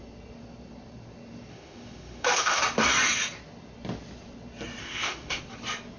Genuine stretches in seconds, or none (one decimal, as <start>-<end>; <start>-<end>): 0.0-1.5; 2.6-4.8; 5.4-6.0